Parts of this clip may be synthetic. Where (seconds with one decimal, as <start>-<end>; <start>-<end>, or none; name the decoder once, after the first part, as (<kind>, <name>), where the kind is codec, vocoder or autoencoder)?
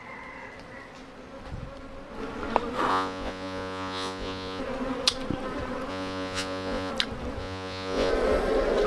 2.9-4.6 (vocoder, Vocos); 5.9-6.9; 7.4-8.1